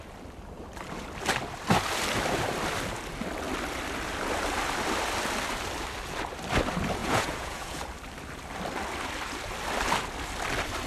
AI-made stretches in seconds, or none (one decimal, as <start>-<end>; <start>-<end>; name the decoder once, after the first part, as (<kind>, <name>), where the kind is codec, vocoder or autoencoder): 7.0-7.8 (vocoder, Vocos)